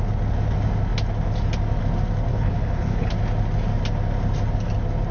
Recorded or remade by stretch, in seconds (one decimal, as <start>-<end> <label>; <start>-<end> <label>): 0.0-2.3 recorded; 2.3-3.1 remade; 3.1-5.1 recorded